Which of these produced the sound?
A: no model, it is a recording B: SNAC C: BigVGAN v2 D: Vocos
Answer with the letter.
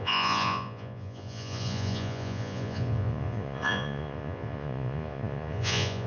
D